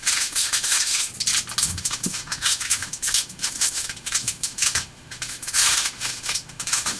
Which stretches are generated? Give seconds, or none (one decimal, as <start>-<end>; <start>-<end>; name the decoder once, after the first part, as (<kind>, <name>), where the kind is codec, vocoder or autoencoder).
0.0-1.1 (autoencoder, DAC-VAE); 1.6-7.0